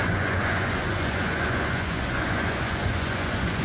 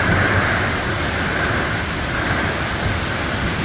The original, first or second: second